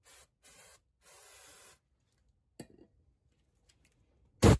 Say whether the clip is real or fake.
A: real